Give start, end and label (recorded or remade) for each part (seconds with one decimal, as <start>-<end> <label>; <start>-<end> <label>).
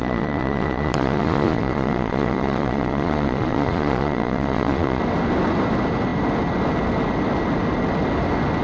0.0-5.0 remade; 5.0-8.6 recorded